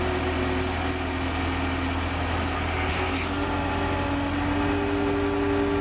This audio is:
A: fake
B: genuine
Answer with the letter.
B